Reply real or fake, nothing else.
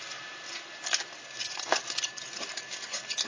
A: fake